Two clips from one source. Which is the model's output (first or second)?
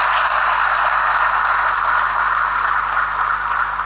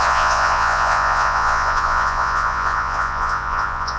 second